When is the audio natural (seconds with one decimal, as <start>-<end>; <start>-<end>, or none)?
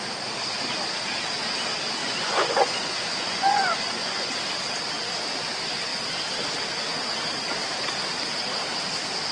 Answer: 0.0-2.0; 4.3-9.3